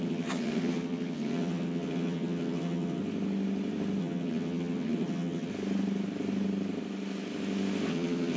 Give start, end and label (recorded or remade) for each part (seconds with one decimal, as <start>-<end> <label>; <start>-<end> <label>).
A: 0.0-3.0 remade; 3.0-4.0 recorded; 4.0-5.5 remade; 5.5-7.9 recorded; 7.9-8.4 remade